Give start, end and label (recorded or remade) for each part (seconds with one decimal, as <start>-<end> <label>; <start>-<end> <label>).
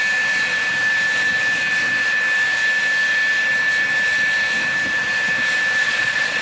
0.0-5.8 recorded; 5.8-6.4 remade